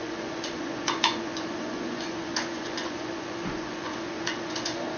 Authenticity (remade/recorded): remade